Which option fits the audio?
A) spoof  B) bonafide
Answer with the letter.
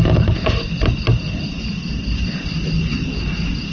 B